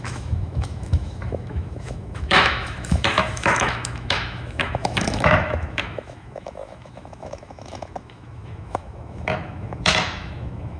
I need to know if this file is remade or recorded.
remade